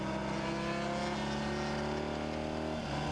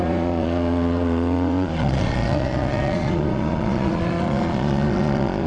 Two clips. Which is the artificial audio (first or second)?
second